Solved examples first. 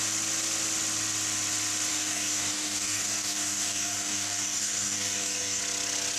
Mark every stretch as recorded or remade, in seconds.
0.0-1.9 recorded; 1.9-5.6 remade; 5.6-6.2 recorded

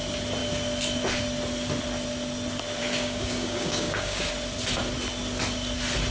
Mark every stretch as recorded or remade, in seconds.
0.0-2.8 recorded; 2.8-4.3 remade; 4.3-6.1 recorded

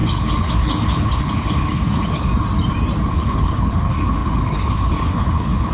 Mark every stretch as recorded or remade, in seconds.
0.0-2.3 remade; 2.3-3.1 recorded; 3.1-5.7 remade